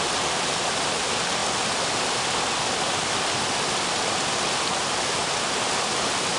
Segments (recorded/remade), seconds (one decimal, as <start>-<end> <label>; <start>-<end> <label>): 0.0-6.4 recorded